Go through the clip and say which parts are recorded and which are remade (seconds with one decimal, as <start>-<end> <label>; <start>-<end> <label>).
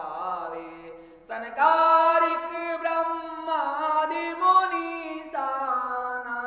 0.0-2.6 remade; 2.6-5.6 recorded; 5.6-6.5 remade